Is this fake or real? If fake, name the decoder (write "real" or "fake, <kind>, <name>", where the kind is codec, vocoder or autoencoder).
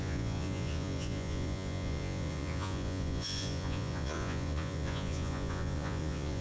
fake, vocoder, Vocos